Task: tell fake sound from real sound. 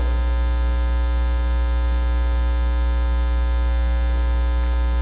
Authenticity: real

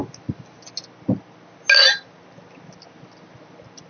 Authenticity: real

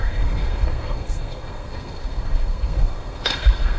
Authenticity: fake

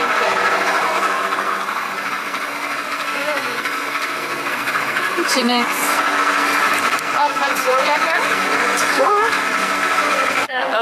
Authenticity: fake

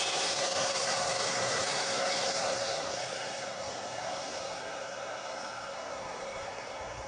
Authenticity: fake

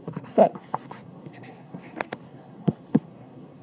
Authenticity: fake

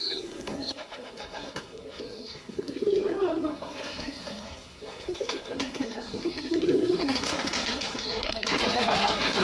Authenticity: fake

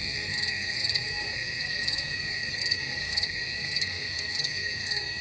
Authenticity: fake